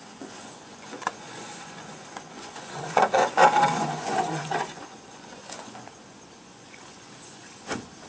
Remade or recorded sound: remade